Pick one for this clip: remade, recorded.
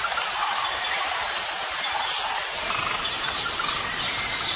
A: recorded